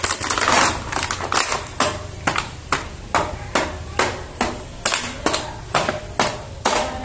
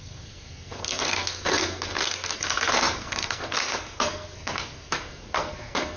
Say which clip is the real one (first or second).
first